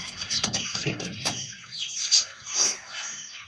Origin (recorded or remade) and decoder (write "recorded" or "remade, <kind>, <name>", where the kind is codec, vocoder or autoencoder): remade, codec, SNAC